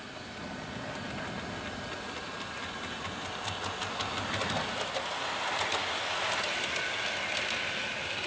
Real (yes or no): yes